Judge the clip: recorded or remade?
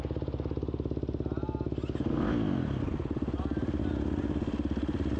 recorded